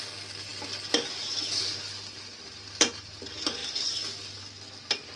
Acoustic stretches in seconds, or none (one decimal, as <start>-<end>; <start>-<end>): 0.0-0.5; 3.2-3.6; 4.3-5.2